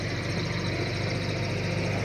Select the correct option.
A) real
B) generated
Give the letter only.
A